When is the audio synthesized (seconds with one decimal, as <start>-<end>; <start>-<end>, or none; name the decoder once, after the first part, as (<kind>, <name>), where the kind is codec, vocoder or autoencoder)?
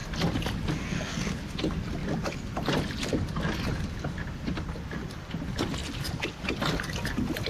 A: none